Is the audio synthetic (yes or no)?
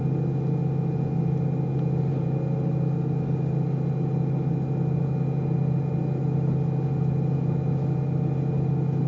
no